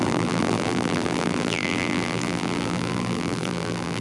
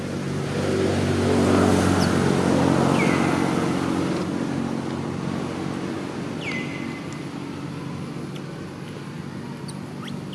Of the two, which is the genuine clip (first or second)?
second